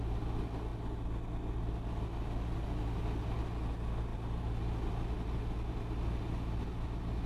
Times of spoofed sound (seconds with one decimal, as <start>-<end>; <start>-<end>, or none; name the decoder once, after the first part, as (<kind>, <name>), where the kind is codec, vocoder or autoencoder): none